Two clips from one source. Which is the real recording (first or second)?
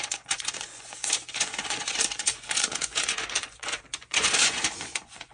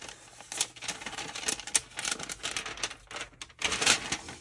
second